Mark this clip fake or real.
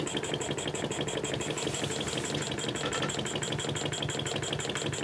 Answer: real